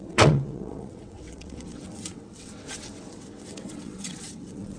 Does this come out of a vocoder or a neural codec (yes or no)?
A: yes